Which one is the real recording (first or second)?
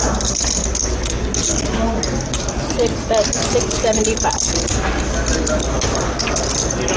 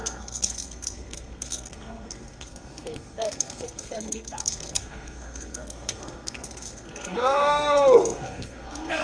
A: first